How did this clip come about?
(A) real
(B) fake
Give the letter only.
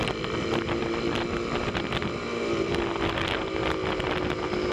A